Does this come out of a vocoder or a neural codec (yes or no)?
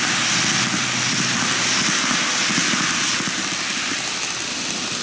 no